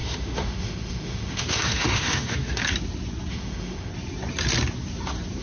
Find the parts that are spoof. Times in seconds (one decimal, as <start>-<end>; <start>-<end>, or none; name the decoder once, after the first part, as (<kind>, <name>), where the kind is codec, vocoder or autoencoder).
0.0-2.6 (autoencoder, DAC-VAE); 3.3-3.9